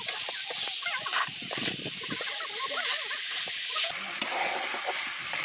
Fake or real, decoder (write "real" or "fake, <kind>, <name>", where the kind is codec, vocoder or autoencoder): real